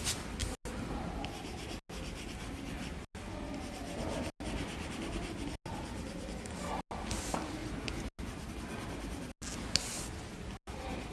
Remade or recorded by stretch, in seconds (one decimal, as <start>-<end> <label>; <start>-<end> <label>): 0.0-11.1 recorded